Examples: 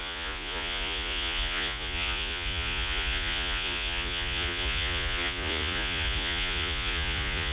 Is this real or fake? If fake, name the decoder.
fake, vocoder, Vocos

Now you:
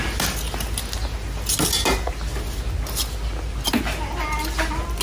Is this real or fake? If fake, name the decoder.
real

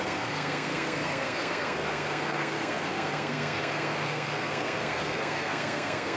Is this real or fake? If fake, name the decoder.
fake, codec, SNAC